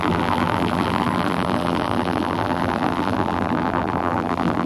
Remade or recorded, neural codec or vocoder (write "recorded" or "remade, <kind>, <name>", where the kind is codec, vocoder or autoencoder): remade, vocoder, BigVGAN v2